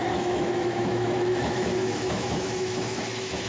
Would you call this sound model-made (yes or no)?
yes